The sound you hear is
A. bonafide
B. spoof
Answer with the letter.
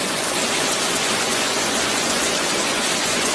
B